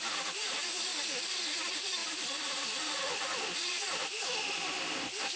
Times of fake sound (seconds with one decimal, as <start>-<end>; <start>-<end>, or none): 0.9-1.4; 2.0-4.5